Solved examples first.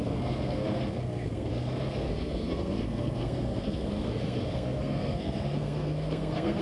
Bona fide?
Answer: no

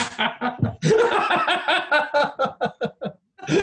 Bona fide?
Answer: yes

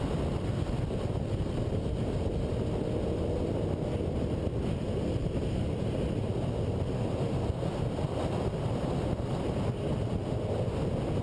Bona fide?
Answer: yes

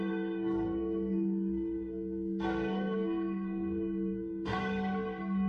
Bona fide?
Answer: no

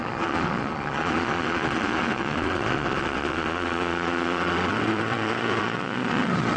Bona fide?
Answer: no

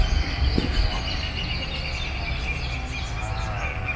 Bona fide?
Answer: yes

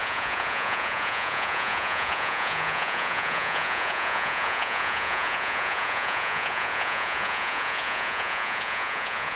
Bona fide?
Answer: no